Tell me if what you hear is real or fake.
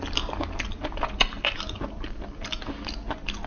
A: real